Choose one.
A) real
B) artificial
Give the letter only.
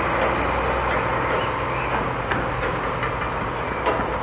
A